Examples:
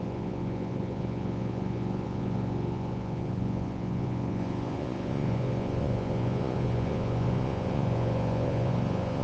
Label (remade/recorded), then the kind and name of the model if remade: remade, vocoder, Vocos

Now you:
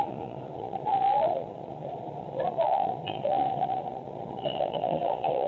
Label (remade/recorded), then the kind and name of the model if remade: remade, vocoder, Vocos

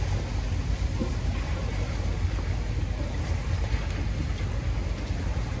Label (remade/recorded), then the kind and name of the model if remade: recorded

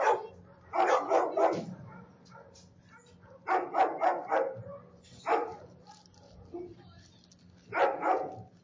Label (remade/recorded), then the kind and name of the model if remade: recorded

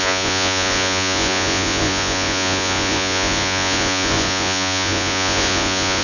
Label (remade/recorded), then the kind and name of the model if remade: remade, vocoder, Vocos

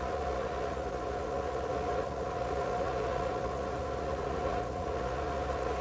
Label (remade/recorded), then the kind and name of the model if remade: remade, vocoder, Vocos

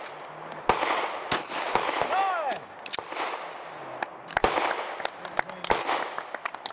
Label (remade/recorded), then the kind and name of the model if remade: recorded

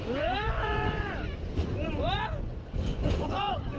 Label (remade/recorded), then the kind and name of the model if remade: remade, vocoder, Vocos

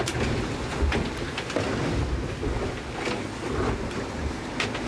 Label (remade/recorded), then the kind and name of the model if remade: recorded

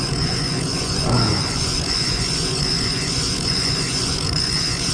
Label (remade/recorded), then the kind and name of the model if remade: remade, vocoder, Vocos